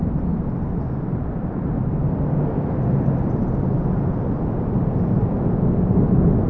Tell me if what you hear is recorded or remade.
recorded